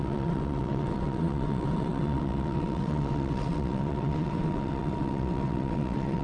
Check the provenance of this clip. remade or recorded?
remade